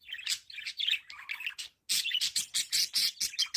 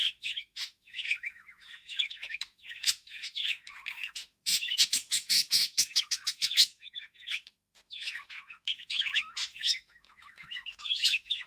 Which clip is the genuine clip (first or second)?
first